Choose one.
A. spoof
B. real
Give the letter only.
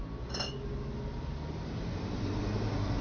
B